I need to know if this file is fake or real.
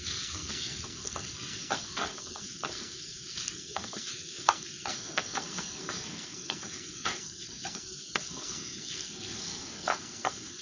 fake